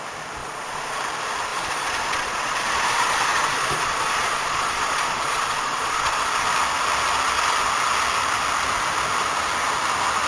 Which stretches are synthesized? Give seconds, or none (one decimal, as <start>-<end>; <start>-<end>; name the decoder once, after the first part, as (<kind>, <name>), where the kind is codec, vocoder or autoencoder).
0.4-1.0 (vocoder, Vocos); 1.5-6.3